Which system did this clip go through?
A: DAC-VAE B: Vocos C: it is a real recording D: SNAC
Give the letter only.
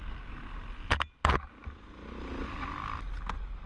C